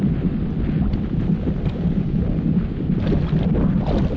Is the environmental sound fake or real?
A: real